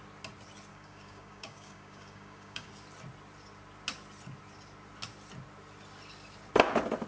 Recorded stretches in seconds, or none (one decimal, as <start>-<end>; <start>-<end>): 0.0-0.7; 2.7-7.1